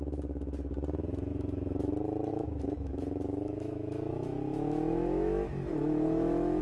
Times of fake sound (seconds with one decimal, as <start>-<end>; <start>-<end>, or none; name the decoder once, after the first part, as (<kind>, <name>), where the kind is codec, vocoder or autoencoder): 1.3-1.9 (autoencoder, DAC-VAE); 2.3-6.6